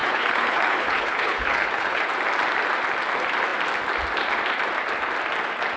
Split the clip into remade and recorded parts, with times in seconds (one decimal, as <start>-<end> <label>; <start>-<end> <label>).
0.0-2.0 remade; 2.0-5.8 recorded